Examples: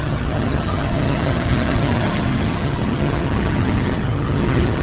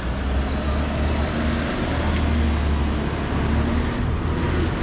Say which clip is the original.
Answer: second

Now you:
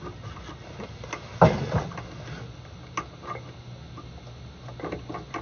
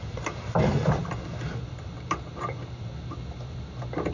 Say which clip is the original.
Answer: first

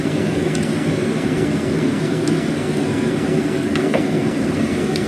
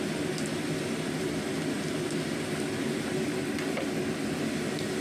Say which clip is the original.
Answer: second